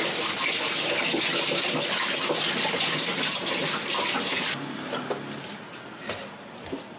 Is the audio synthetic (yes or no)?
no